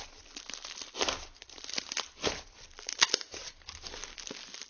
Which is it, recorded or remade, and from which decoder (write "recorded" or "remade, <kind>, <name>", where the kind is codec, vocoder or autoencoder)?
recorded